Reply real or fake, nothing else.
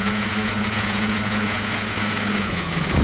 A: fake